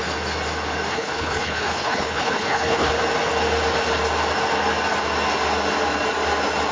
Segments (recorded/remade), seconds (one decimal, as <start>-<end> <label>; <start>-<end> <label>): 0.0-0.9 recorded; 0.9-2.9 remade; 2.9-6.7 recorded